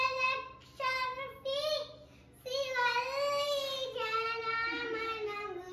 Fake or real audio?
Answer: real